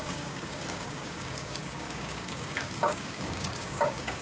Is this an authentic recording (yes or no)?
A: no